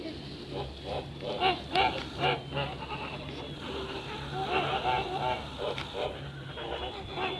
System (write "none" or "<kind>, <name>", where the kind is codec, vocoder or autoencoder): none